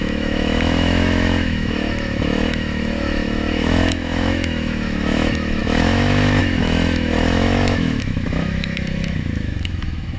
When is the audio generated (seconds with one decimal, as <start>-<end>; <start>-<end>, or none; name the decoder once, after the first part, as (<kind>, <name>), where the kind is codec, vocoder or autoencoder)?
0.0-10.2 (autoencoder, DAC-VAE)